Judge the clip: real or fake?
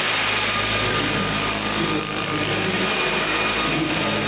real